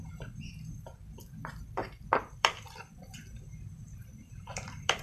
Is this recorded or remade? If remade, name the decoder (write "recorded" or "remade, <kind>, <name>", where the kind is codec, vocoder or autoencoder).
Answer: remade, vocoder, BigVGAN v2